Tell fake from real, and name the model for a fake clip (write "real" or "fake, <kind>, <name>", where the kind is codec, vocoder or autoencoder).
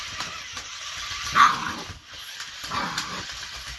fake, vocoder, BigVGAN v2